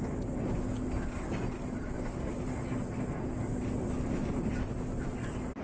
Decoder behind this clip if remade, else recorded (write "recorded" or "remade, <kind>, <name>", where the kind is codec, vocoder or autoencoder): recorded